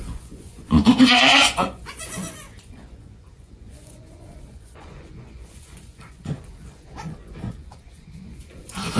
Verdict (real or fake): fake